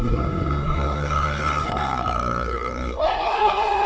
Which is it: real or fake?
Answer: fake